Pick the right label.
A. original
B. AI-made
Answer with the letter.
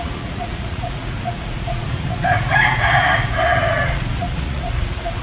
B